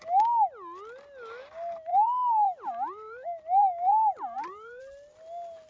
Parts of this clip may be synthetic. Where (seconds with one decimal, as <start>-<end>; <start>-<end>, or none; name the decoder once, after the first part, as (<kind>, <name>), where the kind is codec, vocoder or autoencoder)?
1.9-4.8 (vocoder, BigVGAN v2)